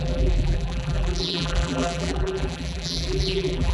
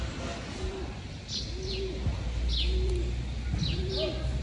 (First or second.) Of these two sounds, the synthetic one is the first